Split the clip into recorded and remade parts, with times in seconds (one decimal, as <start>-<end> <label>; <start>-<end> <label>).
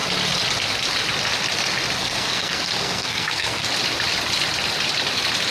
0.0-2.0 recorded; 2.0-3.7 remade; 3.7-5.5 recorded